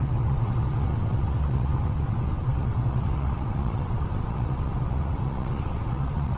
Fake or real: fake